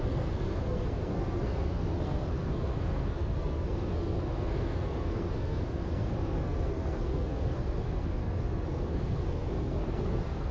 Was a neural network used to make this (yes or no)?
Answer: yes